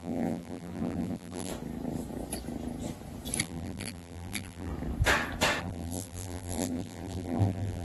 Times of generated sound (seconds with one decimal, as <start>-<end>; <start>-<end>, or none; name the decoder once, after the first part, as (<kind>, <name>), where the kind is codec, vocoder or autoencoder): 0.0-1.5 (vocoder, BigVGAN v2); 3.4-4.7; 5.6-7.8